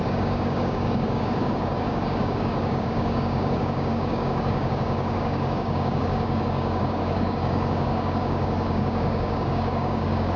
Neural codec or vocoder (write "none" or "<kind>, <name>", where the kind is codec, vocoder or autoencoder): codec, DAC